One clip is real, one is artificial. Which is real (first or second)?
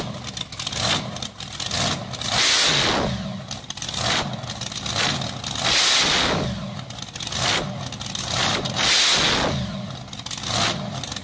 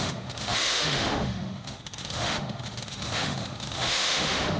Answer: first